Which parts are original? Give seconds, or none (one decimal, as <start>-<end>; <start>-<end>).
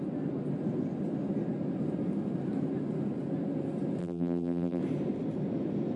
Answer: 0.0-4.0; 4.8-6.0